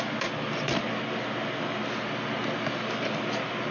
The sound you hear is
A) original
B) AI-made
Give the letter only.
A